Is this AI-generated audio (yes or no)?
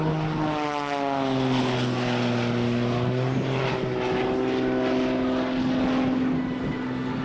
no